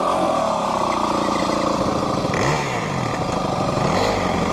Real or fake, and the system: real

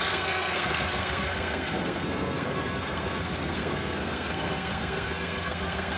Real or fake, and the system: fake, codec, SNAC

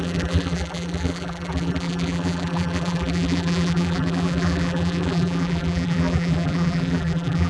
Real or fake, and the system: fake, vocoder, BigVGAN v2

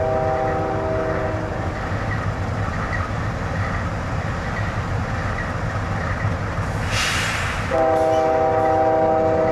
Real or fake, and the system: real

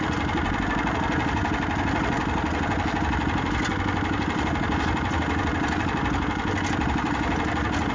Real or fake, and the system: real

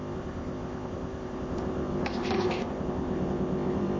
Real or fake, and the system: fake, codec, ZipCodec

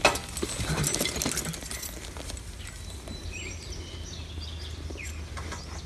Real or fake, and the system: real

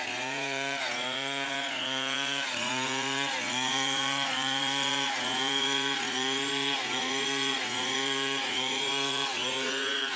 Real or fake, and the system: fake, vocoder, Vocos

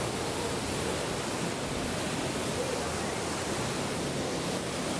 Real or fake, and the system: real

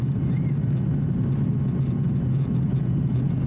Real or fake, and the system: real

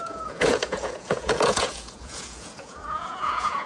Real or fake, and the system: fake, vocoder, Vocos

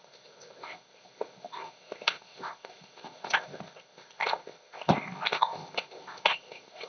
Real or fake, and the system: fake, codec, ZipCodec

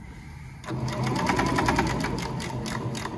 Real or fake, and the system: real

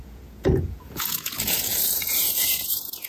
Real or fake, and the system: fake, vocoder, Vocos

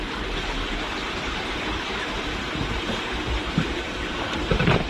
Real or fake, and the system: fake, vocoder, BigVGAN v2